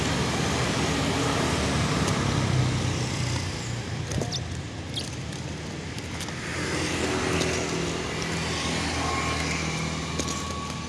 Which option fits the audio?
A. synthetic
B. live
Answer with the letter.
B